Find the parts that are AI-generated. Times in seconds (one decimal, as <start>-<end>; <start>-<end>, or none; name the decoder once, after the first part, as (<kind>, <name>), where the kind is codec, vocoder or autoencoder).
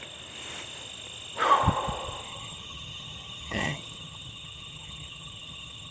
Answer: 2.3-5.9 (vocoder, HiFi-GAN)